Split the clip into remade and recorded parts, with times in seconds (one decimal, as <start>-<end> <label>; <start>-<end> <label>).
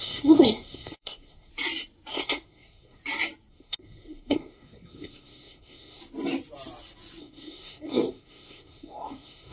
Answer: 0.0-1.5 remade; 1.5-2.1 recorded; 2.1-3.0 remade; 3.0-3.5 recorded; 3.5-6.0 remade; 6.0-7.2 recorded; 7.2-9.5 remade